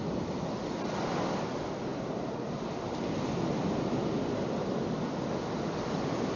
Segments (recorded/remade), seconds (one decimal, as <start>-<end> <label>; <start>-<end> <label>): 0.0-6.4 recorded